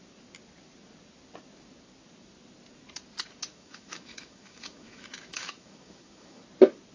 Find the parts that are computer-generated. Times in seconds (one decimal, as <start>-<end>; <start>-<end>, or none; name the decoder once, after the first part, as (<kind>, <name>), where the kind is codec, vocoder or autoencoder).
3.5-6.4 (autoencoder, DAC-VAE)